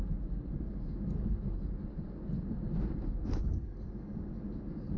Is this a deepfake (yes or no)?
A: no